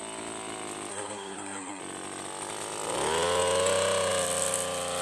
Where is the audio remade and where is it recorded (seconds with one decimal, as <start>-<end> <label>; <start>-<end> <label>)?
0.0-0.9 recorded; 0.9-1.8 remade; 1.8-5.0 recorded